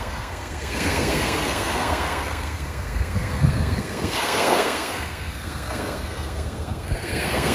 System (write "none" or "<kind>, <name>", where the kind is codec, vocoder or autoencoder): codec, SNAC